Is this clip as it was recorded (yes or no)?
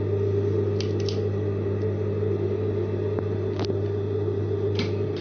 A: yes